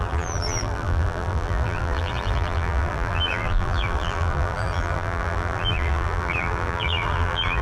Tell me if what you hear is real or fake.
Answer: fake